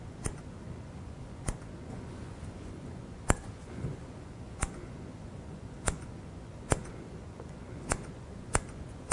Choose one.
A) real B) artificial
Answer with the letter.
B